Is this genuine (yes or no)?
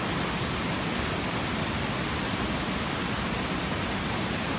yes